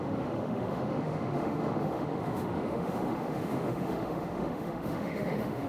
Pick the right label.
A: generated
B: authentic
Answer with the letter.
A